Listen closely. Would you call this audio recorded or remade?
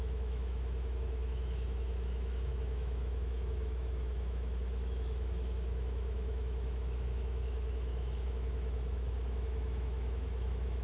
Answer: remade